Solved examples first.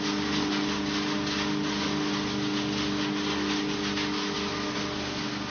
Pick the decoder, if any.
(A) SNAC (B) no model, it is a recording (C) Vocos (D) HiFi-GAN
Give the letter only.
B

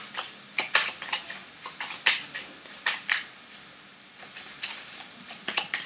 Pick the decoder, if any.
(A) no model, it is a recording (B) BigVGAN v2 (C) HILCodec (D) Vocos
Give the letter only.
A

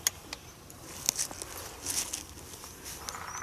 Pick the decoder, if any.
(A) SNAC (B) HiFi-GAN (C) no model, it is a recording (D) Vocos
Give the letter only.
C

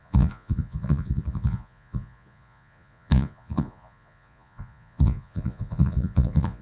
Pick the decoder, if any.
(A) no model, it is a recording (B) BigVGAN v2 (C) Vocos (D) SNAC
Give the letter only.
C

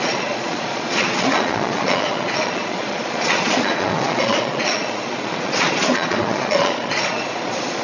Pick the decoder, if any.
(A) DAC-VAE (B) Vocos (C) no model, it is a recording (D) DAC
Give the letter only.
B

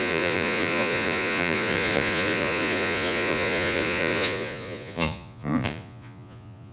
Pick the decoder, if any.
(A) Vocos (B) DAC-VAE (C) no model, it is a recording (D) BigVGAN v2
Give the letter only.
A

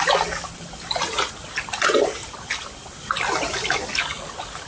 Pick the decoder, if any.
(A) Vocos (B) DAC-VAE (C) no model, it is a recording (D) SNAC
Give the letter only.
C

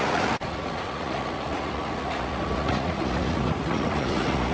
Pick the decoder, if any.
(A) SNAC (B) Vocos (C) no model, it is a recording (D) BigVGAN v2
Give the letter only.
B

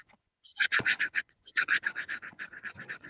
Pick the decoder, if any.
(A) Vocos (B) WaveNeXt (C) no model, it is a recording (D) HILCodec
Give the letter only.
A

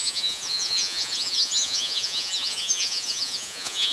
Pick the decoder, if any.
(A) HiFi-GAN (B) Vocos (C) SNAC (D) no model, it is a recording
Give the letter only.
B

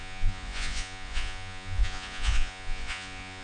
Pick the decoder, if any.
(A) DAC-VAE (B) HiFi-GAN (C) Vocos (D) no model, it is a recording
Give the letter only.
C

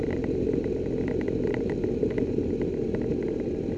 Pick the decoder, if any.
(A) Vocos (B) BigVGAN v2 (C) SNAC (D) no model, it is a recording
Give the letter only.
D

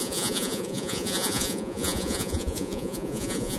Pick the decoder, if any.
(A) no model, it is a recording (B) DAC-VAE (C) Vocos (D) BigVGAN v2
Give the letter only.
C